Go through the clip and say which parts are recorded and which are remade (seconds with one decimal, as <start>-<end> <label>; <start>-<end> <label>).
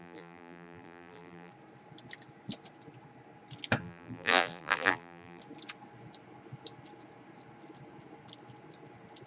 0.0-1.5 remade; 1.5-3.8 recorded; 3.8-5.4 remade; 5.4-9.3 recorded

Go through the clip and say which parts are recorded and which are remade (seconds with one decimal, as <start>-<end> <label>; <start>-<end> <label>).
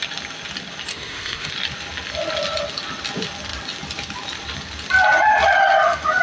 0.0-0.9 recorded; 0.9-1.5 remade; 1.5-6.2 recorded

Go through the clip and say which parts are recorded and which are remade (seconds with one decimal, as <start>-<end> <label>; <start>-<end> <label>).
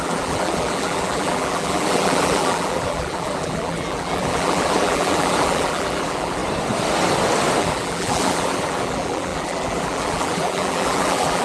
0.0-6.4 remade; 6.4-7.6 recorded; 7.6-11.4 remade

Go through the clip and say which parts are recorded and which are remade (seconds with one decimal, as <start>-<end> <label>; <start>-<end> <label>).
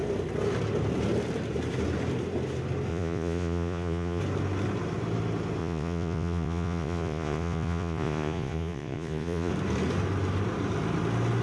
0.0-2.9 recorded; 2.9-4.2 remade; 4.2-5.6 recorded; 5.6-9.5 remade; 9.5-11.4 recorded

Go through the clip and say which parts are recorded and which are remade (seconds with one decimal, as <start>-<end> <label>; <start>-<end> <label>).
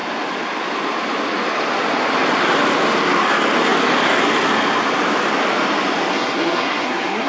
0.0-6.1 recorded; 6.1-7.3 remade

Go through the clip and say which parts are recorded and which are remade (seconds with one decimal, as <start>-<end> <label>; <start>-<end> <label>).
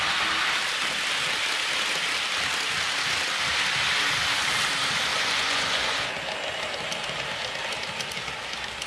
0.0-5.1 recorded; 5.1-6.0 remade; 6.0-8.9 recorded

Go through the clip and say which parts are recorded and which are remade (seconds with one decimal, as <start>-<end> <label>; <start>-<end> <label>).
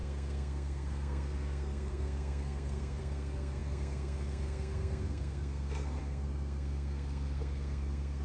0.0-8.2 remade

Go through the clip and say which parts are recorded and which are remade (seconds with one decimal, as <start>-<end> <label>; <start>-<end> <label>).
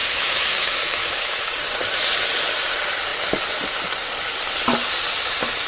0.0-1.5 remade; 1.5-5.7 recorded